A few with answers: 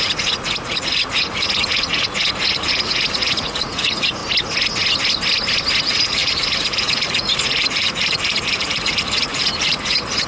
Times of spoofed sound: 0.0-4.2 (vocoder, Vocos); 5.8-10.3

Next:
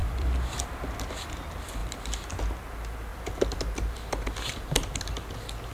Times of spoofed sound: 0.0-0.7 (vocoder, BigVGAN v2); 1.8-2.4

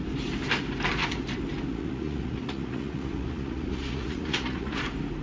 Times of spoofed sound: 1.7-4.8 (vocoder, Vocos)